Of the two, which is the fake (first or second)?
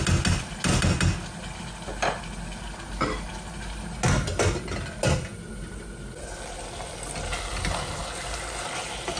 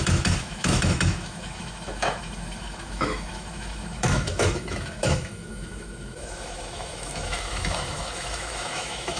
second